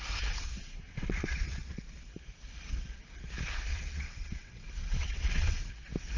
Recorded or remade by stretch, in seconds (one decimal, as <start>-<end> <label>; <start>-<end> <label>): 0.0-0.6 recorded; 0.6-1.8 remade; 1.8-3.7 recorded; 3.7-5.7 remade; 5.7-6.2 recorded